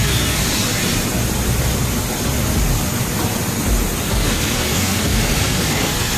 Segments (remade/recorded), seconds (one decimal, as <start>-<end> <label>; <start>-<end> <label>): 0.0-0.4 remade; 0.4-4.1 recorded; 4.1-6.2 remade